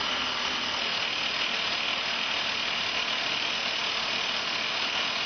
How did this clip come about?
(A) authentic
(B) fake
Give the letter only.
A